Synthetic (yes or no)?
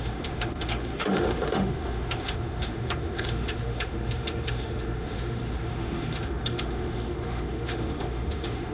yes